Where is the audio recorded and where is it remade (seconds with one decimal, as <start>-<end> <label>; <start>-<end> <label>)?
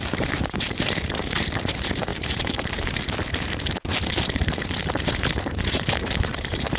0.0-6.8 remade